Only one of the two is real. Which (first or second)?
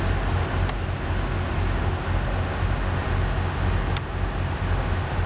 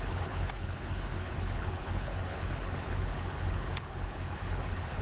first